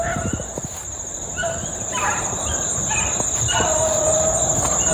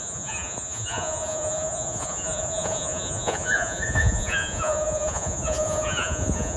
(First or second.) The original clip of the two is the first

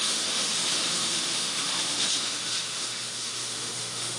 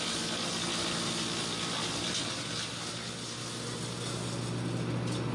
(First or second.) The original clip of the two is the second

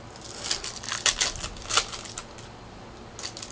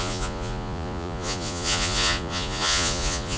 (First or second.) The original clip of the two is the first